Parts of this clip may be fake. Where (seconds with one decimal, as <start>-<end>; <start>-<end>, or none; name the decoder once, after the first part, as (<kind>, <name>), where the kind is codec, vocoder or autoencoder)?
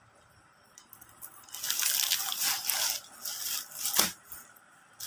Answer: none